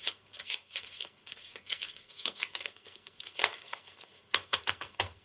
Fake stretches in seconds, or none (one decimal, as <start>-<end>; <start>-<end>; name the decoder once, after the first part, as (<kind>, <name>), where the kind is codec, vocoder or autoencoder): 0.0-5.2 (codec, SNAC)